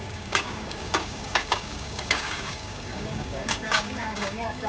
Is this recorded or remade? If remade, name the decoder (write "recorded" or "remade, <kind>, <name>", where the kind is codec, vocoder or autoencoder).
remade, codec, DAC